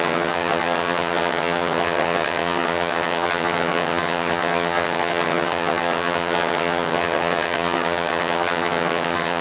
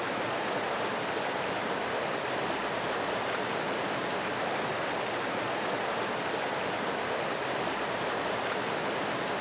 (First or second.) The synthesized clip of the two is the first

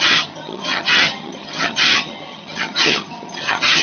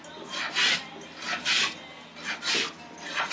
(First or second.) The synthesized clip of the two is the first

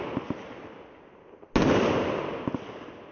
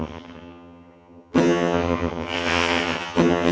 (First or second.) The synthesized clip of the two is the second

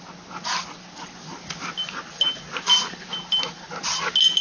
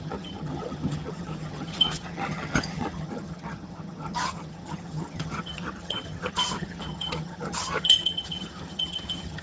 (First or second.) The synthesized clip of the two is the second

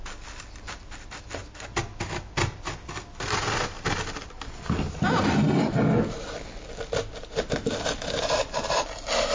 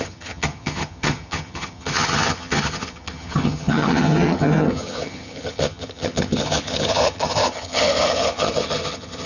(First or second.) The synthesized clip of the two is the second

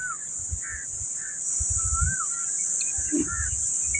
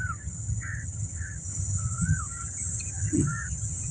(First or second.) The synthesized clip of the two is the second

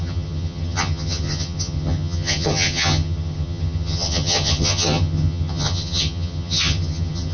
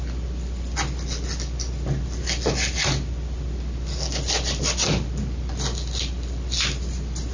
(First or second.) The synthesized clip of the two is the first